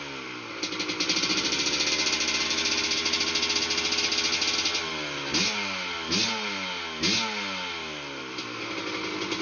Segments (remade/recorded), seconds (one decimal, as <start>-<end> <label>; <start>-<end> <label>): 0.0-9.4 recorded